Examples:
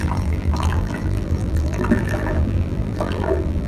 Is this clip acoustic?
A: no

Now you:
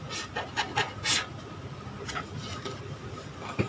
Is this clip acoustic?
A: yes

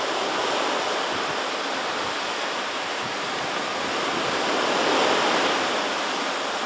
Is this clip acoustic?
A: yes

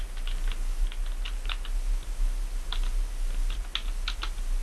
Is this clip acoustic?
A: yes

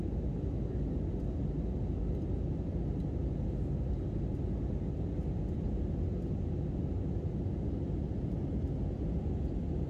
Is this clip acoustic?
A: yes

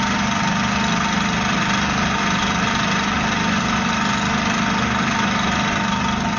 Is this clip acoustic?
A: yes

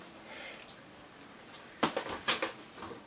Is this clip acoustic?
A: yes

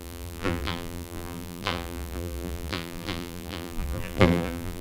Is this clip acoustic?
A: no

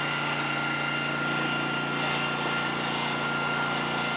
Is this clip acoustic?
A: yes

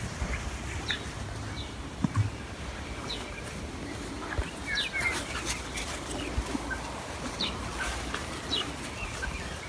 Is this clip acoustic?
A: yes